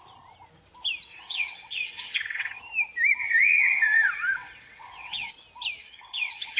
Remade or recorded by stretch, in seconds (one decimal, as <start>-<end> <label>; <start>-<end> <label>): 0.0-1.1 recorded; 1.1-2.6 remade; 2.6-3.2 recorded; 3.2-5.3 remade; 5.3-5.8 recorded; 5.8-6.6 remade